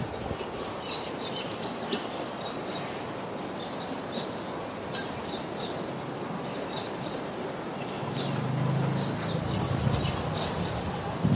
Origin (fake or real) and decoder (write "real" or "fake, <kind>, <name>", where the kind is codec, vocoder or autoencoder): real